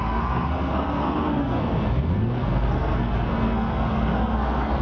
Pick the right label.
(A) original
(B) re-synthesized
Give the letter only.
B